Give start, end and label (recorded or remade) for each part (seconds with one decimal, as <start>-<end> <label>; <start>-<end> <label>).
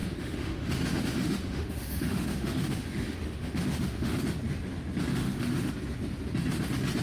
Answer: 0.0-4.2 remade; 4.2-5.1 recorded; 5.1-5.7 remade; 5.7-7.0 recorded